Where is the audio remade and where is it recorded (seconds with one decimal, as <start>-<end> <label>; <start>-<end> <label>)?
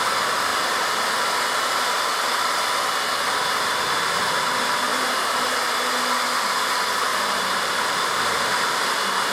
0.0-4.9 recorded; 4.9-5.5 remade; 5.5-7.1 recorded; 7.1-8.8 remade; 8.8-9.3 recorded